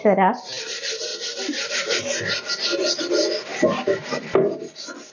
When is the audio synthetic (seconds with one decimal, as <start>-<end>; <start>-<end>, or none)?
none